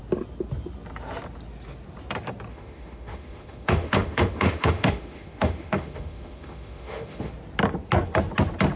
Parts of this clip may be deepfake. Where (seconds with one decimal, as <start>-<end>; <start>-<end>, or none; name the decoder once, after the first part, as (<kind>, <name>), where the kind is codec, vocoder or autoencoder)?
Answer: 2.5-7.3 (autoencoder, DAC-VAE)